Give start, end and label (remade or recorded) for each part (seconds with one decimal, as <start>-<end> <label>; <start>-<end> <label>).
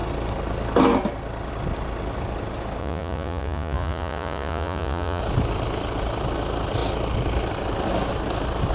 0.0-2.8 recorded; 2.8-5.2 remade; 5.2-8.7 recorded